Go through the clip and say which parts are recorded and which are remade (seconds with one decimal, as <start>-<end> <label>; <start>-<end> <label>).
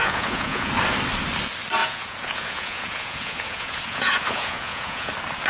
0.0-0.7 remade; 0.7-1.8 recorded; 1.8-5.1 remade; 5.1-5.5 recorded